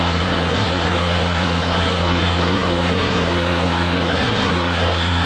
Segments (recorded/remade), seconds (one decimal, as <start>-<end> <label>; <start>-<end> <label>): 0.0-5.3 remade